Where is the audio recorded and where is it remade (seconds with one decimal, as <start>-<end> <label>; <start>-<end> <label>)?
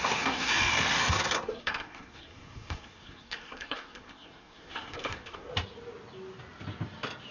0.0-0.5 remade; 0.5-1.1 recorded; 1.1-5.5 remade; 5.5-7.3 recorded